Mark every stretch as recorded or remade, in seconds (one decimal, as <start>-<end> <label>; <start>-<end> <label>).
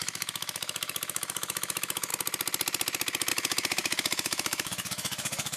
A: 0.0-2.1 remade; 2.1-3.3 recorded; 3.3-5.6 remade